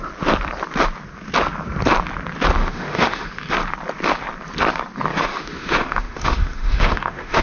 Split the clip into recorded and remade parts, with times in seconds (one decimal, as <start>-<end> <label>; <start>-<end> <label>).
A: 0.0-2.6 recorded; 2.6-3.5 remade; 3.5-5.1 recorded; 5.1-7.4 remade